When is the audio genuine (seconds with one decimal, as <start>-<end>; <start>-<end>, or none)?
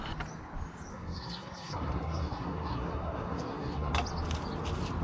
0.0-0.9; 3.9-5.0